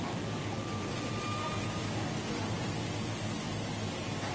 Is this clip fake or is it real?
real